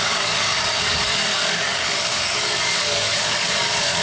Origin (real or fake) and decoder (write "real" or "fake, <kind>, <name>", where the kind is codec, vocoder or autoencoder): fake, codec, DAC